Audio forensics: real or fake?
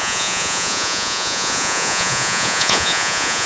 fake